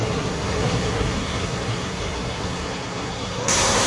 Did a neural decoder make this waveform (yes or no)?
yes